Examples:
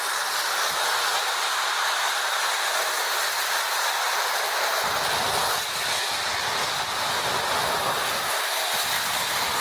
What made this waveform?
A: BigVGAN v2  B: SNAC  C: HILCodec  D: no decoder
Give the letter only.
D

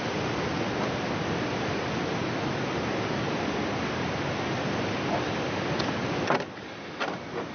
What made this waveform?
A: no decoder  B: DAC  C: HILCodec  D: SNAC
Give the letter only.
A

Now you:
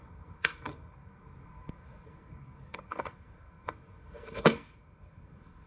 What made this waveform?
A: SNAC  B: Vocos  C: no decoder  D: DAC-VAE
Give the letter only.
A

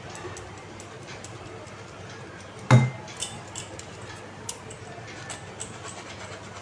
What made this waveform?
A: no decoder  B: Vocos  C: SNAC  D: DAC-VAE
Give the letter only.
A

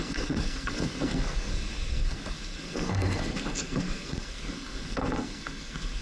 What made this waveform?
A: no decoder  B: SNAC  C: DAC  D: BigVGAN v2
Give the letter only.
B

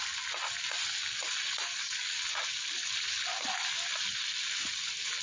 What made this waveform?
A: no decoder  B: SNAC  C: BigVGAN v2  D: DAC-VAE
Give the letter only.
A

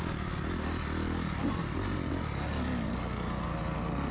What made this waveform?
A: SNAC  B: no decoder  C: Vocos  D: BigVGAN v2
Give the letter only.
B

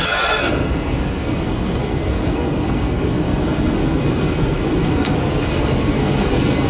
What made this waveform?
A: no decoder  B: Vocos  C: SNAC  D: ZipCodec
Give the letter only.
C